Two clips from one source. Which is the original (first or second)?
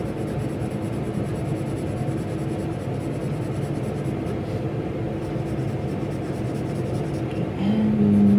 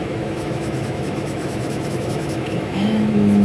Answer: first